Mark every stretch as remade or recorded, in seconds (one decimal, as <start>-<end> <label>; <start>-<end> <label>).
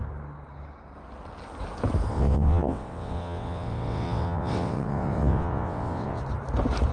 0.0-2.1 recorded; 2.1-6.2 remade; 6.2-6.9 recorded